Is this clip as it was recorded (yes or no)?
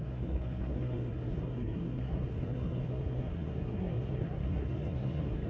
no